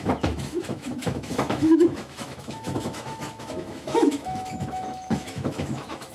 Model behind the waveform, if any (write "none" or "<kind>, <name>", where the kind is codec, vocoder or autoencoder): autoencoder, DAC-VAE